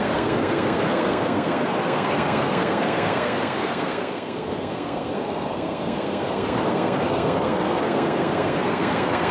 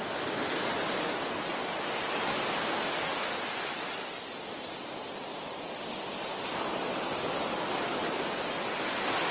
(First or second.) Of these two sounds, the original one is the second